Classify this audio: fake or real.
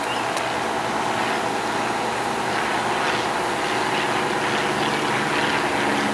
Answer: real